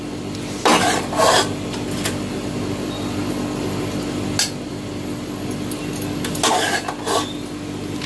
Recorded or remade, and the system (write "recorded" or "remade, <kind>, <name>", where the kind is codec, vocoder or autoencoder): recorded